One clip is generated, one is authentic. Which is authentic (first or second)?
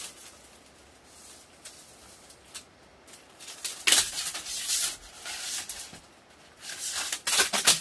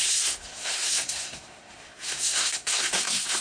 first